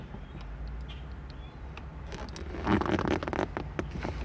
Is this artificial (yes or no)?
no